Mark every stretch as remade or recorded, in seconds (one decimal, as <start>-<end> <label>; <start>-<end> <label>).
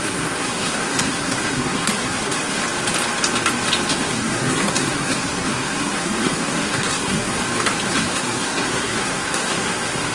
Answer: 0.0-2.6 remade; 2.6-3.9 recorded; 3.9-7.4 remade; 7.4-7.9 recorded; 7.9-10.1 remade